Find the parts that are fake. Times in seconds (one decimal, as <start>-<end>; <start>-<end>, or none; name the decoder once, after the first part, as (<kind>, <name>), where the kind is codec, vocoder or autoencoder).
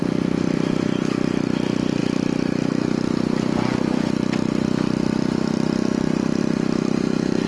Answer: none